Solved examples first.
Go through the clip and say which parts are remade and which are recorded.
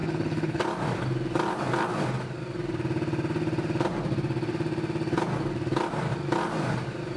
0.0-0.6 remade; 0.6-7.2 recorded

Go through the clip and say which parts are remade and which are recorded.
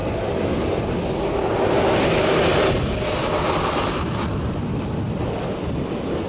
0.0-0.8 remade; 0.8-6.3 recorded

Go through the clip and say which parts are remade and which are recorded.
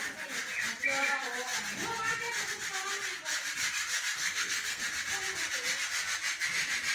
0.0-4.2 recorded; 4.2-4.8 remade; 4.8-6.9 recorded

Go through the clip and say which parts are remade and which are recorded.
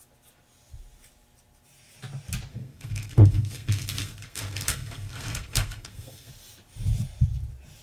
0.0-2.5 recorded; 2.5-6.3 remade; 6.3-7.8 recorded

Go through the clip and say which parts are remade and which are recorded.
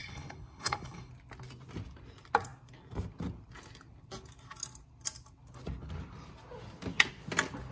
0.0-1.1 remade; 1.1-7.7 recorded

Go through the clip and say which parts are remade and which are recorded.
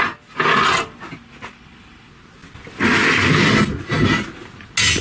0.0-2.4 recorded; 2.4-3.5 remade; 3.5-5.0 recorded